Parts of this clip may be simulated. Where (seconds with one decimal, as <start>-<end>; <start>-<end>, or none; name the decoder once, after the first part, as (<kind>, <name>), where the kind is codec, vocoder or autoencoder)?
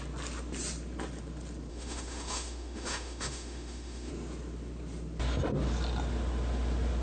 1.7-4.1 (autoencoder, DAC-VAE)